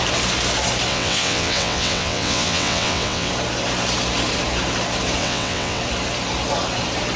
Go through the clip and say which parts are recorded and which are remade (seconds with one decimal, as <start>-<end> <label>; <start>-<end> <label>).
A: 0.0-0.9 recorded; 0.9-3.3 remade; 3.3-5.2 recorded; 5.2-5.8 remade; 5.8-7.2 recorded